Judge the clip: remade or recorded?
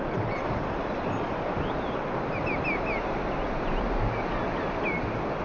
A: recorded